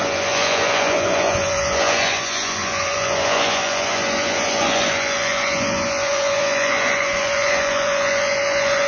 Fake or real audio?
fake